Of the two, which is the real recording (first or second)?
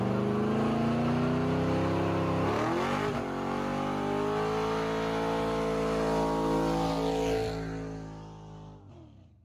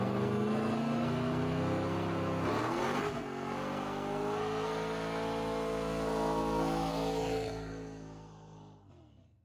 first